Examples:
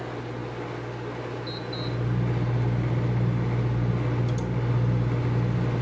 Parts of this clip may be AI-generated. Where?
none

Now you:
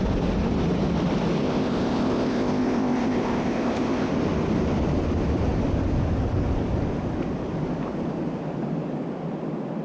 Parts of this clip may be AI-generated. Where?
1.4-4.1 (codec, ZipCodec)

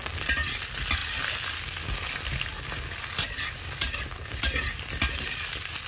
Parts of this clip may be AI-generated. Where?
none

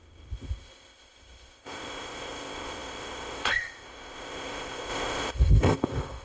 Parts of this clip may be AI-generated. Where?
0.0-6.2 (codec, ZipCodec)

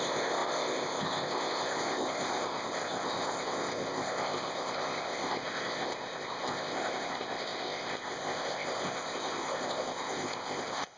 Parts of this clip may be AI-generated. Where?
0.0-11.0 (codec, ZipCodec)

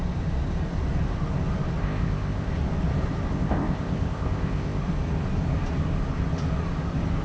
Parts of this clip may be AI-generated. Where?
1.8-2.5 (codec, ZipCodec); 3.3-4.8